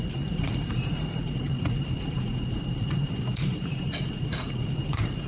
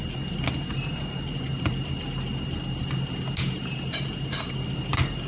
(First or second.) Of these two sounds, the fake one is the first